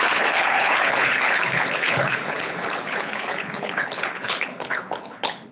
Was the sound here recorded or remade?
remade